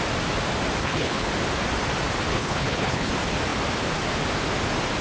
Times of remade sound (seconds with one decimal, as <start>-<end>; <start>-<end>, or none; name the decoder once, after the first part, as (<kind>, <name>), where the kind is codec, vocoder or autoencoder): 0.8-1.3 (codec, HILCodec); 2.3-3.1